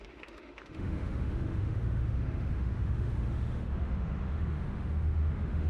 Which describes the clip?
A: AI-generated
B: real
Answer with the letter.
A